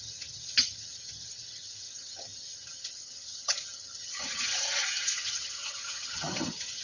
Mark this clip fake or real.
fake